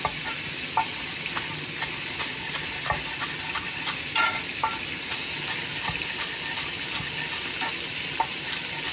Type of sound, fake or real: real